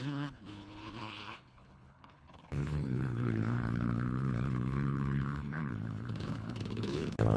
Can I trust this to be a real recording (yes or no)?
no